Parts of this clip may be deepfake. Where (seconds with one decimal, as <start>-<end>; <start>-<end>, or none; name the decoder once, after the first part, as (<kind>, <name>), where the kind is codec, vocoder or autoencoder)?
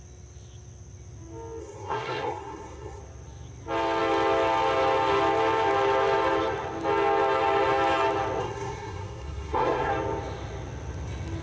1.6-3.0 (codec, SNAC); 8.4-9.9